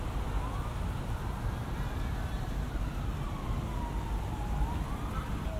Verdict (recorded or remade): recorded